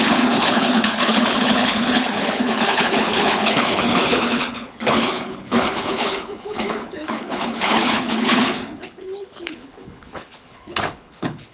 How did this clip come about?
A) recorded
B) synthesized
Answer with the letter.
B